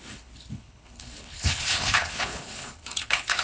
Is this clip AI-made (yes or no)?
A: yes